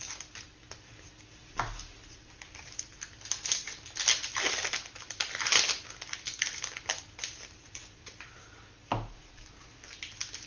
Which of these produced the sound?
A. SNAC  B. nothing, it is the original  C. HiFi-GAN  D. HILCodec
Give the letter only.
B